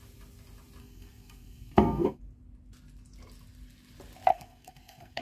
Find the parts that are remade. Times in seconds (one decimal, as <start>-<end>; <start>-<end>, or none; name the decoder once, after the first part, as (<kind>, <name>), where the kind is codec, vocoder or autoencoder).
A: 0.8-2.2 (codec, SNAC); 4.3-5.2